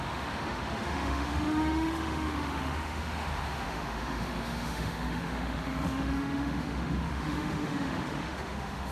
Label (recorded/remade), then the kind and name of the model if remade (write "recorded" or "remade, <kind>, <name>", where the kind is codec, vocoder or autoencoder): remade, autoencoder, DAC-VAE